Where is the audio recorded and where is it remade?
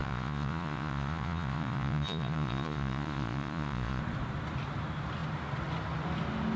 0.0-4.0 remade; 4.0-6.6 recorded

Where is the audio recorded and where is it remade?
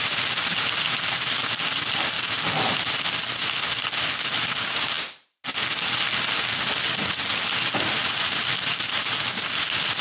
0.0-10.0 recorded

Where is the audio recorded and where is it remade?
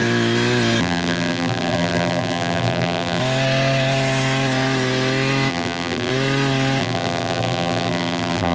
0.0-0.8 recorded; 0.8-3.2 remade; 3.2-5.5 recorded; 5.5-6.1 remade; 6.1-6.8 recorded; 6.8-8.5 remade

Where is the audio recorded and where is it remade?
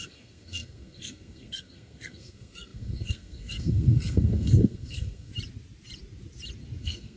0.0-5.3 remade; 5.3-6.8 recorded; 6.8-7.2 remade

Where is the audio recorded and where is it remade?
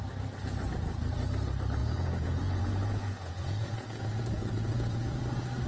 0.0-1.8 recorded; 1.8-5.2 remade; 5.2-5.7 recorded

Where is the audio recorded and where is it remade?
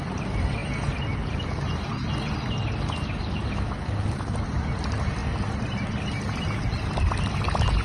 0.0-7.8 recorded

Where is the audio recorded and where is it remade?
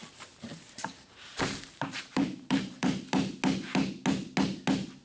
0.0-3.0 remade; 3.0-5.0 recorded